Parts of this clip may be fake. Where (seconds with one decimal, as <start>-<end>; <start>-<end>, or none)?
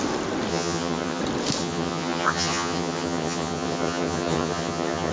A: 0.5-1.2; 1.6-5.1